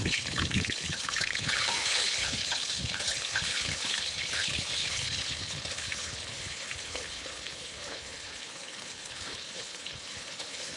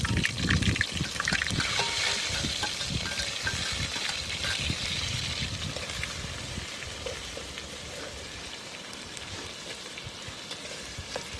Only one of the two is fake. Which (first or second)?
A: first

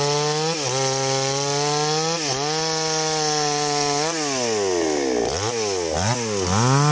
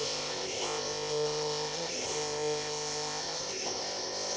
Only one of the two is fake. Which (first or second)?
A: second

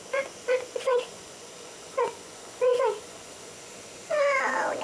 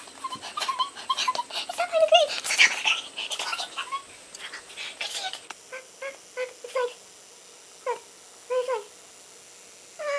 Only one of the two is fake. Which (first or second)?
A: first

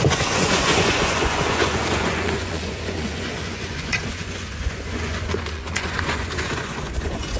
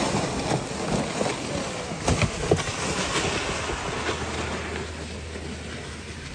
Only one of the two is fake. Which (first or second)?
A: first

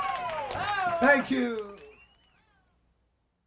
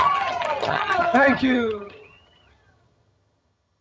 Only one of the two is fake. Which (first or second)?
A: second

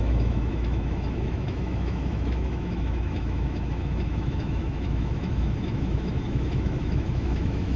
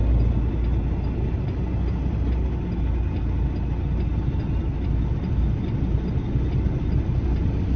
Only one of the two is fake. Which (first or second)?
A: first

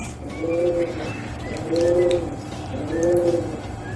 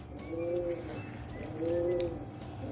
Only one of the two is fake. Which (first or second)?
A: first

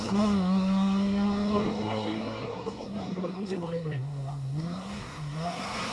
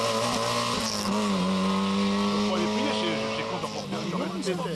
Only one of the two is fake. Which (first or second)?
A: first